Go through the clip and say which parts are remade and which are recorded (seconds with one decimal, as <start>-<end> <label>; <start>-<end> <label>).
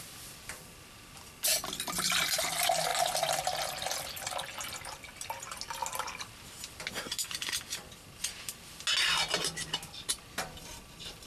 0.0-11.3 recorded